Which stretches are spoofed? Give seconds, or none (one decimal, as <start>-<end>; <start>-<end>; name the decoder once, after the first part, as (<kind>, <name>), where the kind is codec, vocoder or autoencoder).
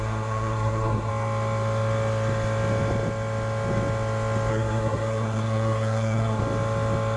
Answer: 0.0-1.1 (codec, SNAC); 4.5-6.4